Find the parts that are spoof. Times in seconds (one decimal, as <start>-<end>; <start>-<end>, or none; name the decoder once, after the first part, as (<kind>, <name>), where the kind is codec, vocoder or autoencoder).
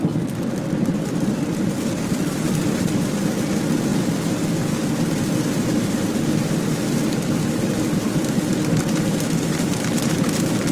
2.3-2.9 (vocoder, BigVGAN v2)